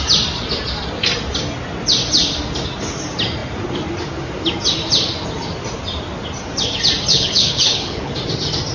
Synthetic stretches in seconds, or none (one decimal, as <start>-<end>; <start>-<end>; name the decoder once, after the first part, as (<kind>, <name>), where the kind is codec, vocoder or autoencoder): 7.1-8.1 (codec, HILCodec)